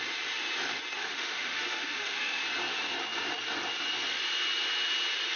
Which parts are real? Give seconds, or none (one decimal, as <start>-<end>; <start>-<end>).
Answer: 0.0-1.0; 2.4-5.4